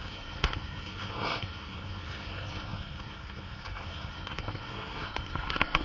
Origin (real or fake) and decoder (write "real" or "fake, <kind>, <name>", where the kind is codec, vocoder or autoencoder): fake, codec, SNAC